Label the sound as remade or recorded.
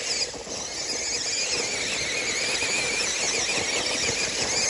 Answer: recorded